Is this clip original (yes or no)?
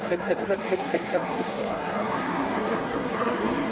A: no